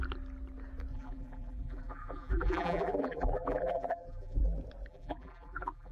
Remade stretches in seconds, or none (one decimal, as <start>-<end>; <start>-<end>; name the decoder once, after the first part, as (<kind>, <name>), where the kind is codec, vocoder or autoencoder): 0.9-4.4 (vocoder, BigVGAN v2); 4.9-5.9